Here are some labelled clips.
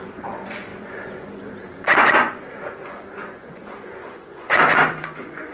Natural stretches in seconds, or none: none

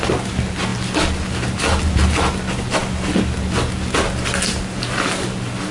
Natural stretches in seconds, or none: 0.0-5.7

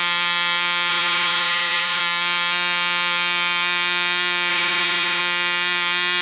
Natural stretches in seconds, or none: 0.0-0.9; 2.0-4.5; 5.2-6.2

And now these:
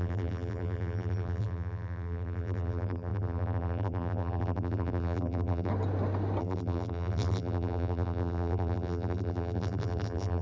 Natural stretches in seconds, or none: 5.7-6.4

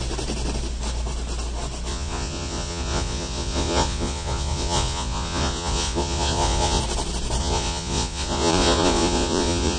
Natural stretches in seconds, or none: 0.0-1.9; 6.8-7.4

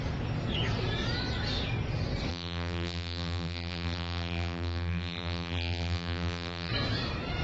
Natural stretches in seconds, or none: 0.0-2.3; 6.7-7.4